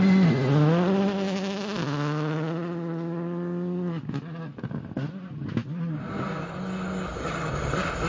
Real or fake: real